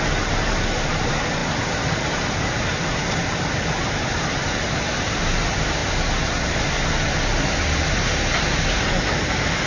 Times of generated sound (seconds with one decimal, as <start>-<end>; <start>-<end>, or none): 0.0-5.8; 7.9-9.7